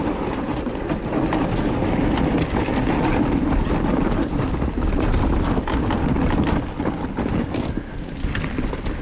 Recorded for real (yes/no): yes